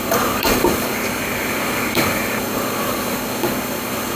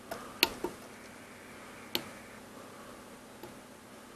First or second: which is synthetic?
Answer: first